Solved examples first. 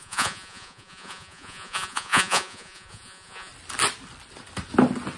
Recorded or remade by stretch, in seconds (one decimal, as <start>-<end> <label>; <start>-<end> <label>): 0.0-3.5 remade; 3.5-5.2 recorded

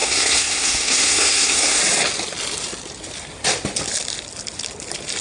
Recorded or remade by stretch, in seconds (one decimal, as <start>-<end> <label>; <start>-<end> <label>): 0.0-1.8 remade; 1.8-5.2 recorded

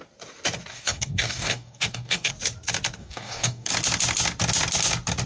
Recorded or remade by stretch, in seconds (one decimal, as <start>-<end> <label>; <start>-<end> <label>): 0.0-0.7 recorded; 0.7-2.3 remade; 2.3-3.0 recorded; 3.0-3.7 remade; 3.7-5.3 recorded